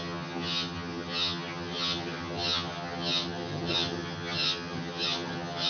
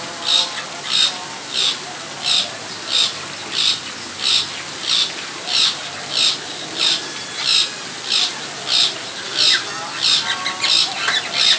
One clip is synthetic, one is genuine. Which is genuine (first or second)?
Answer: second